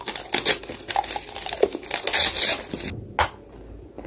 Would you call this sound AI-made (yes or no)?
no